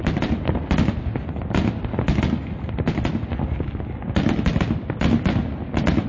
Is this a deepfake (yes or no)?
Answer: no